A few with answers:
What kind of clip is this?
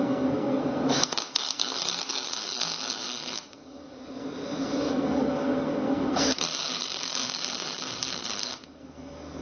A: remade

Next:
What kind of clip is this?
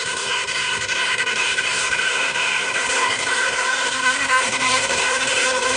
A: remade